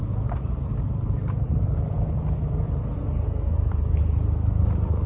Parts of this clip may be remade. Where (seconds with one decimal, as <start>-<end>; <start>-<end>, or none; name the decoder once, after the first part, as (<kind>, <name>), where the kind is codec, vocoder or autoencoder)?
0.0-0.7 (vocoder, BigVGAN v2)